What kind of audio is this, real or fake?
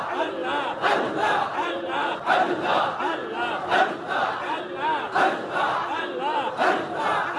real